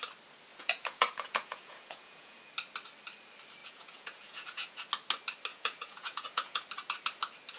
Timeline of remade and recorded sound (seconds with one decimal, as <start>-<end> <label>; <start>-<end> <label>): 0.0-0.5 recorded; 0.5-2.4 remade; 2.4-3.6 recorded; 3.6-4.9 remade; 4.9-5.5 recorded; 5.5-6.6 remade; 6.6-7.6 recorded